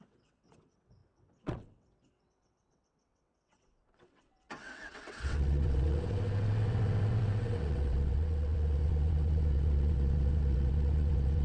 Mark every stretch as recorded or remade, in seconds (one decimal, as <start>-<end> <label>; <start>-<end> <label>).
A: 0.0-11.4 remade

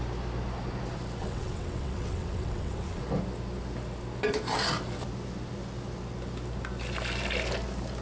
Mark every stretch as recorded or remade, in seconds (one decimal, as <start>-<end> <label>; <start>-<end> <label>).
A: 0.0-1.2 recorded; 1.2-3.0 remade; 3.0-8.0 recorded

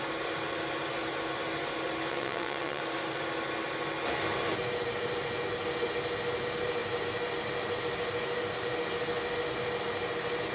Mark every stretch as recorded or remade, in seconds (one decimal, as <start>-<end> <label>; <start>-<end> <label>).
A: 0.0-2.1 recorded; 2.1-2.8 remade; 2.8-10.5 recorded

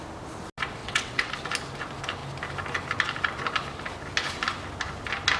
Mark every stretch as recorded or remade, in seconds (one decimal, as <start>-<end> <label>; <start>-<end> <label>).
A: 0.0-0.8 recorded; 0.8-1.3 remade; 1.3-5.4 recorded

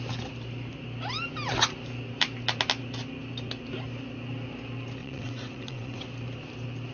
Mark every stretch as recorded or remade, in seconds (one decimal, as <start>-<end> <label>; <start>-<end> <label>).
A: 0.0-5.0 recorded; 5.0-6.0 remade; 6.0-6.9 recorded